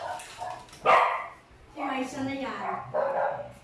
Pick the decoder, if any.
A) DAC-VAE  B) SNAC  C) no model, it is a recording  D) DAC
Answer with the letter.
C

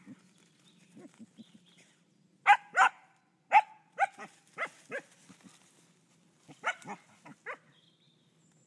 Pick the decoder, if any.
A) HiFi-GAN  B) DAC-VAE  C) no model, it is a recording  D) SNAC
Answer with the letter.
C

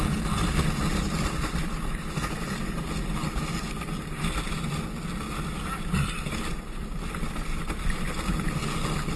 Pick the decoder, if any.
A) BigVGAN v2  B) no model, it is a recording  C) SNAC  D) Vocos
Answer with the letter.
B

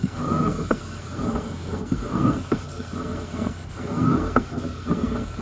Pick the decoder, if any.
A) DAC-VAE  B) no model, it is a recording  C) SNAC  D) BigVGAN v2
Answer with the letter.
C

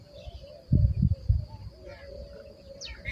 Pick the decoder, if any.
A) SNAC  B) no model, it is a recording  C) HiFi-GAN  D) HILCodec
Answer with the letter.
B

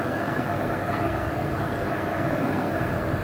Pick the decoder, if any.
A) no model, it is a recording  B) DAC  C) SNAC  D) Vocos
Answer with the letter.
C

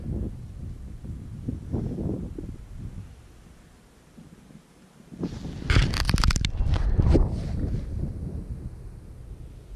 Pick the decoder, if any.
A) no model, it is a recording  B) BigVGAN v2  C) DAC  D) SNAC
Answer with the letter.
A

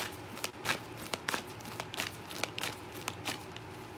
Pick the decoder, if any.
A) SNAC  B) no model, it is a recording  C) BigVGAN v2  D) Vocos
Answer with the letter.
B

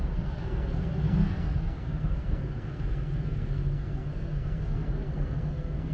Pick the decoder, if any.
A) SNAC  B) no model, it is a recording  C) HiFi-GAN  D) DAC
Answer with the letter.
A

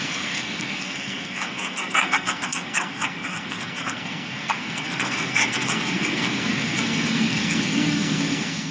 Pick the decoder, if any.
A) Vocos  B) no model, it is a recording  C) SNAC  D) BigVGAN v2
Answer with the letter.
C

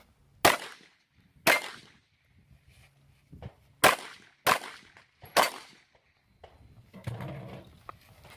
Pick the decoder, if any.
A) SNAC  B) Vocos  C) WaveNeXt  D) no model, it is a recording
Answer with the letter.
D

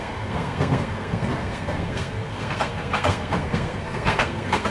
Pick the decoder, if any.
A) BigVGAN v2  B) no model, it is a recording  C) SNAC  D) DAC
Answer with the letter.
C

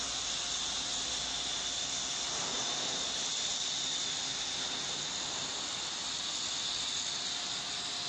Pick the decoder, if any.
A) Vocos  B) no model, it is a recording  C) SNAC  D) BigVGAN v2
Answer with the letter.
B